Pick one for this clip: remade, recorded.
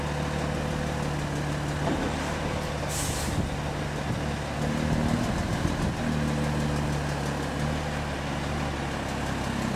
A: recorded